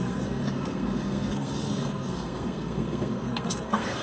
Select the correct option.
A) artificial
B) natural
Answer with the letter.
A